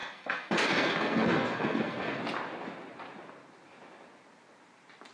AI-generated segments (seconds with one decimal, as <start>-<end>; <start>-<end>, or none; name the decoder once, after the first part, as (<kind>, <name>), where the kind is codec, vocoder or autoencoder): 0.0-2.2 (codec, SNAC)